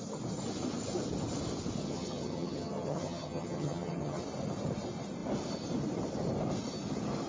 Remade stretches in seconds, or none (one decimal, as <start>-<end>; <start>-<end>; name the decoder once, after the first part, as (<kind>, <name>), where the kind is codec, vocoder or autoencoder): 1.8-4.2 (vocoder, HiFi-GAN)